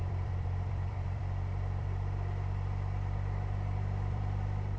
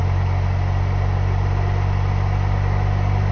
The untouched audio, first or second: second